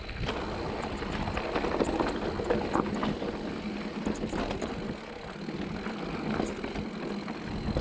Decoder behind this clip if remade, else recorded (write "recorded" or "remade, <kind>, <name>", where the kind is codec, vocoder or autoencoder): recorded